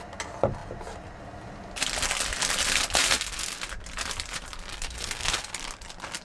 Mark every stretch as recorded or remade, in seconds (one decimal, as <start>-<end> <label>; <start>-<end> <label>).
0.0-3.0 recorded; 3.0-3.6 remade; 3.6-4.7 recorded; 4.7-5.5 remade; 5.5-6.2 recorded